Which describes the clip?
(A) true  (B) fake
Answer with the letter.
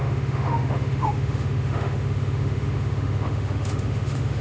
B